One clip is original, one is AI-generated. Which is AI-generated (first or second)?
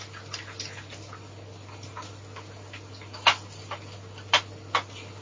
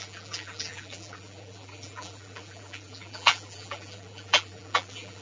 second